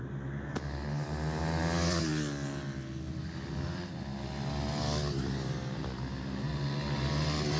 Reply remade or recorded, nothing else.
recorded